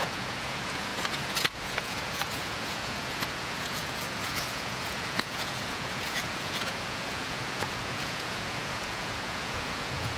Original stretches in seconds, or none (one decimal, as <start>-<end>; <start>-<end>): none